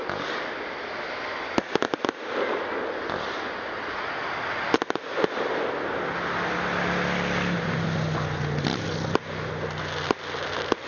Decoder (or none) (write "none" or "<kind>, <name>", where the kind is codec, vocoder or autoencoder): none